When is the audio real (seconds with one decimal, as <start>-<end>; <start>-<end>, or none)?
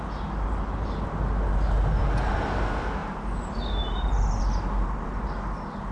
0.0-5.9